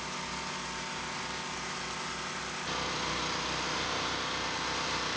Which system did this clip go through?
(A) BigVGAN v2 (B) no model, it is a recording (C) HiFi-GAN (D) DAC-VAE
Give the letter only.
B